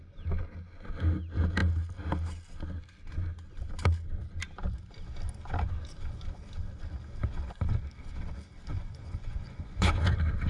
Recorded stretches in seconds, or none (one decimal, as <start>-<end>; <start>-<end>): 0.0-8.7; 10.1-10.5